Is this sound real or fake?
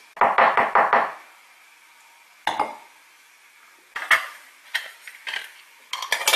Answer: real